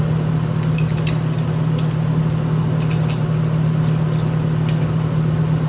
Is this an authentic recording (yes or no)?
yes